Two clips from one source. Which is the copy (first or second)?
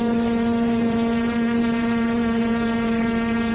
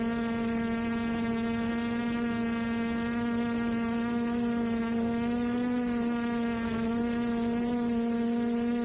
first